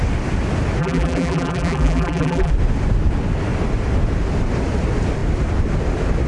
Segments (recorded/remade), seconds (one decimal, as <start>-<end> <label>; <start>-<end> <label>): 0.0-0.8 recorded; 0.8-2.5 remade; 2.5-6.3 recorded